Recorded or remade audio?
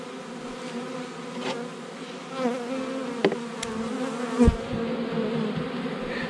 recorded